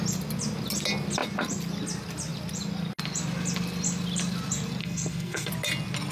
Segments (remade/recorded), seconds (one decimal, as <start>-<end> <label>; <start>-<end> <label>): 0.0-4.8 recorded; 4.8-5.5 remade; 5.5-6.1 recorded